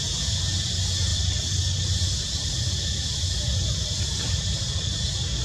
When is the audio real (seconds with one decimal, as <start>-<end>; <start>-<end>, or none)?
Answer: 0.0-5.4